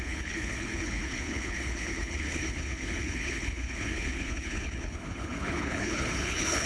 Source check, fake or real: fake